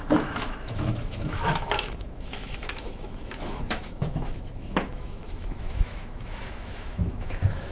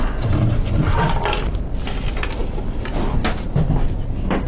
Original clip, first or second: second